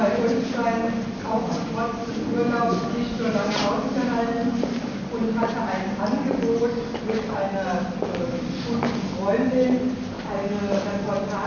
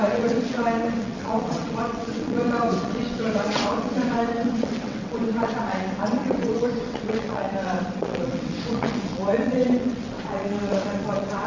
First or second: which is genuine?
first